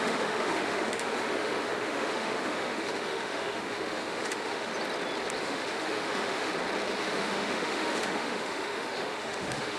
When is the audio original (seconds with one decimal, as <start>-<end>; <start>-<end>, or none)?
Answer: 4.7-5.4; 6.5-7.0